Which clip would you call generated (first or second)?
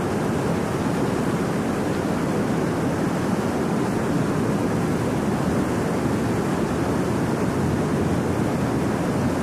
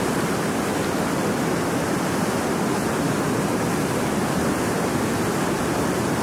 second